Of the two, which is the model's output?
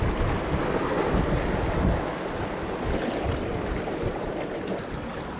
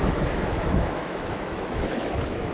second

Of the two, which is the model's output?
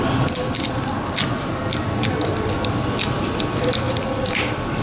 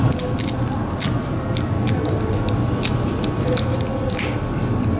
first